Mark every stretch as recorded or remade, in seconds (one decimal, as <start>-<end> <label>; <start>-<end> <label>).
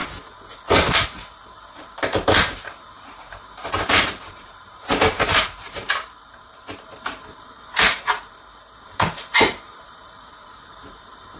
0.0-0.9 recorded; 0.9-11.4 remade